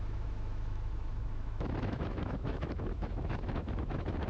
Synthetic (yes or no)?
yes